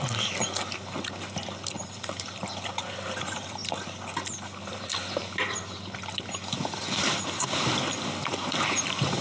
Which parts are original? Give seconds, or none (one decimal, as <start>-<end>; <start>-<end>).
0.0-9.2